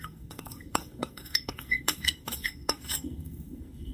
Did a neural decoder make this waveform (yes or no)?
yes